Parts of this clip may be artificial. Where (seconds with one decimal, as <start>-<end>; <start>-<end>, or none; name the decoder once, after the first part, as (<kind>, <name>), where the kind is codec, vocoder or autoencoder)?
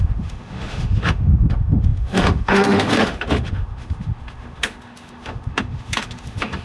0.0-6.6 (autoencoder, DAC-VAE)